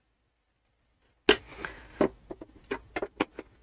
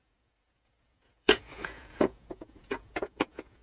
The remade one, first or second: second